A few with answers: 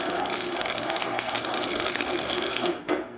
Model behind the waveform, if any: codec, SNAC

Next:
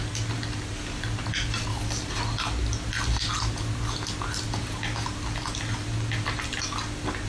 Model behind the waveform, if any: none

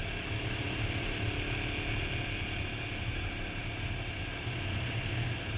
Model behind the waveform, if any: none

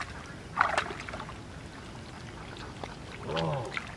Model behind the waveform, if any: none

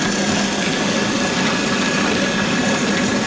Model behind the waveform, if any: none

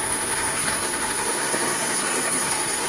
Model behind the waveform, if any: codec, SNAC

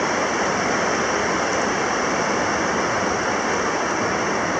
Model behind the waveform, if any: none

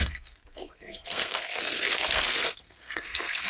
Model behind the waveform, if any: codec, SNAC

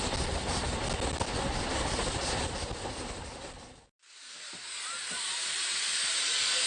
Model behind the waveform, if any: none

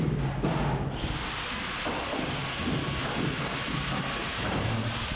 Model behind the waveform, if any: none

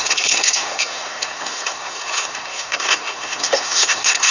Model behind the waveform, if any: codec, SNAC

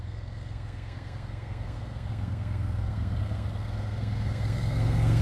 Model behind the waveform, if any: codec, SNAC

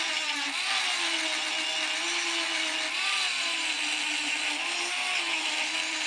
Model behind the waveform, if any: none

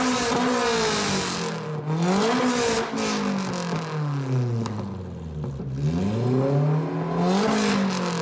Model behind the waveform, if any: none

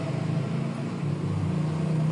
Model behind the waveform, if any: none